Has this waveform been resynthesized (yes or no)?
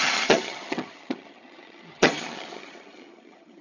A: yes